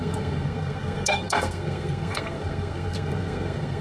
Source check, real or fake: fake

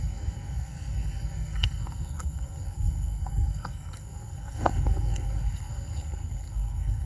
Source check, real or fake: fake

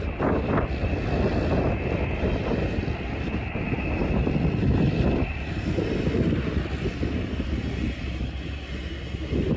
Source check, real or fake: real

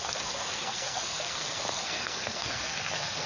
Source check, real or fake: fake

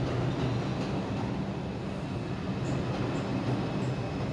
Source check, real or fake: real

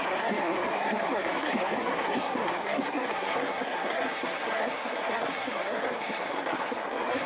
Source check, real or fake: fake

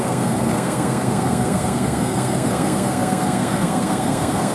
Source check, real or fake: fake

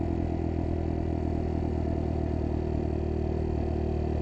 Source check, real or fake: real